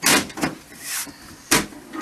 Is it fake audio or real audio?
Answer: real